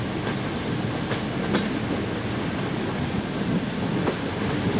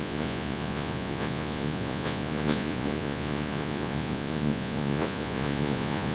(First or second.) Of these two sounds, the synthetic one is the second